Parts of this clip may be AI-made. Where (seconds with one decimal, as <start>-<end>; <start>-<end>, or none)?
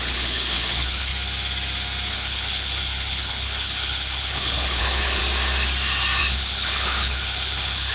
0.0-1.1; 2.1-5.2; 6.2-7.9